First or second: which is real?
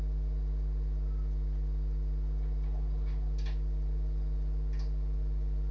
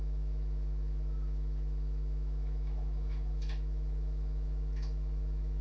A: first